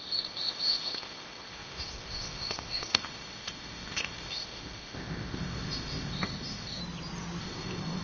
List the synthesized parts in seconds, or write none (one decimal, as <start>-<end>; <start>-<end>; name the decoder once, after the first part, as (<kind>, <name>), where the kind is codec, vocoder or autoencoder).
0.0-6.8 (codec, ZipCodec); 7.4-8.0